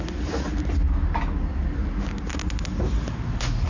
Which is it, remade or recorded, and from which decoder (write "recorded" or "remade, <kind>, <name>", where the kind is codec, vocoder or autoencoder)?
recorded